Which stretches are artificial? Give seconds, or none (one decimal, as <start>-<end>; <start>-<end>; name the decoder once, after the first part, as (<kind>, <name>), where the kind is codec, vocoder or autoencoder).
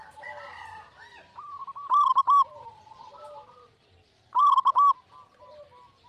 1.6-2.1 (vocoder, BigVGAN v2)